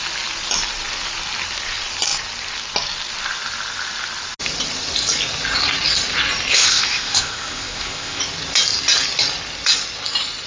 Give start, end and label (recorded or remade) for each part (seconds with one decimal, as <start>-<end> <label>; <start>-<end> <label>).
0.0-6.5 recorded; 6.5-8.2 remade; 8.2-10.5 recorded